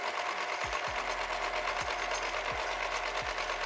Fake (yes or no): no